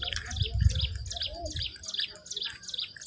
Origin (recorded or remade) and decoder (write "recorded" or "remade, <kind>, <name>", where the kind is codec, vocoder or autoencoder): recorded